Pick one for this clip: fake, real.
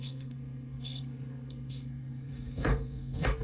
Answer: fake